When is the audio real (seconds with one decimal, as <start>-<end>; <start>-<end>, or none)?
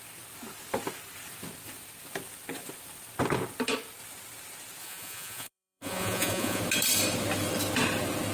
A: 0.0-4.8; 6.6-8.3